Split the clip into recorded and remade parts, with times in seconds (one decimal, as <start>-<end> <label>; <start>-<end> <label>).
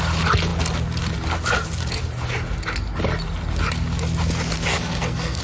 0.0-4.7 recorded; 4.7-5.4 remade